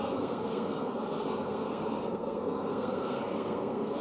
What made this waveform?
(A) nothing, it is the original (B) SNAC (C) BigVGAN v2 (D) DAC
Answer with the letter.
B